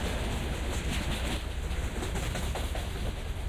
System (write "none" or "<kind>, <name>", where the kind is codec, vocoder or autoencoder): none